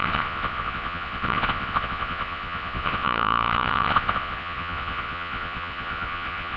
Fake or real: fake